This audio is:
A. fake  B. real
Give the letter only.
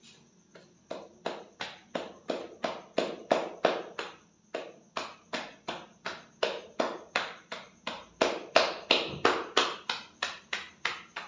B